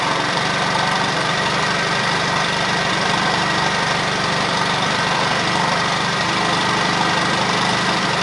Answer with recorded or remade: remade